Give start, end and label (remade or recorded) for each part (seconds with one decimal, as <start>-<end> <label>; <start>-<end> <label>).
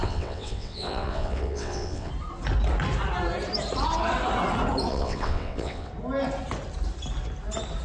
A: 0.0-2.1 remade; 2.1-4.9 recorded; 4.9-5.9 remade; 5.9-7.8 recorded